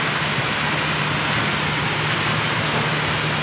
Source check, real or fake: real